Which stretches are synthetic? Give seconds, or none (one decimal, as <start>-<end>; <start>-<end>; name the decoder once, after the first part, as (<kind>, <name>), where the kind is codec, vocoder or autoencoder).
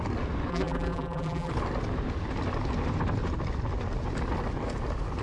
0.5-1.5 (vocoder, BigVGAN v2)